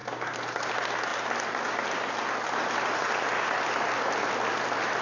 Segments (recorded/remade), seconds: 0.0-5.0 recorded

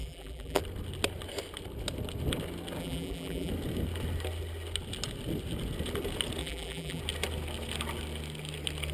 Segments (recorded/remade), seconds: 0.0-0.6 remade; 0.6-2.8 recorded; 2.8-3.5 remade; 3.5-6.4 recorded; 6.4-7.0 remade; 7.0-8.9 recorded

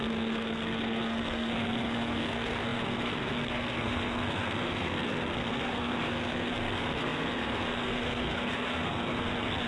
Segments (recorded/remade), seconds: 0.0-9.7 remade

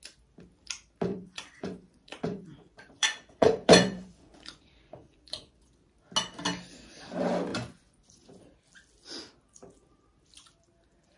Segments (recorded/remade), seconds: 0.0-1.1 recorded; 1.1-5.7 remade; 5.7-7.5 recorded; 7.5-8.4 remade; 8.4-11.2 recorded

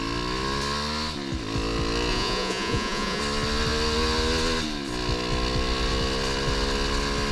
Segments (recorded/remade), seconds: 0.0-2.1 recorded; 2.1-3.2 remade; 3.2-7.3 recorded

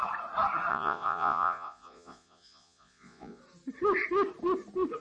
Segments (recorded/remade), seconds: 0.0-0.7 recorded; 0.7-3.4 remade; 3.4-5.0 recorded

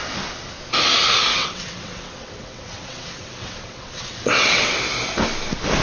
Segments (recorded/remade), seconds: 0.0-1.3 recorded; 1.3-4.8 remade; 4.8-5.8 recorded

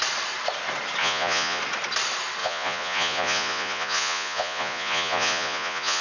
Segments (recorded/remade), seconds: 0.0-1.0 recorded; 1.0-1.6 remade; 1.6-2.4 recorded; 2.4-6.0 remade